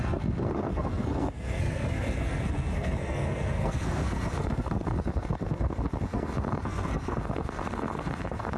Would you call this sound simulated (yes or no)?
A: yes